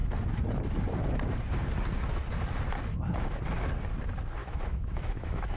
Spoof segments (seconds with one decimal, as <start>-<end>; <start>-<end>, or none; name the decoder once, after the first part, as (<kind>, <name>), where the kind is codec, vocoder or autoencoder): 4.4-5.6 (autoencoder, DAC-VAE)